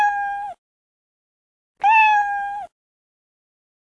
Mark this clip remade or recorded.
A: recorded